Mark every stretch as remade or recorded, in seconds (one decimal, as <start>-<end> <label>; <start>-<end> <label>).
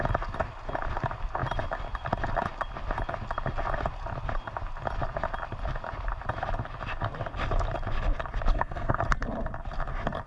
0.0-8.5 recorded; 8.5-9.0 remade; 9.0-10.3 recorded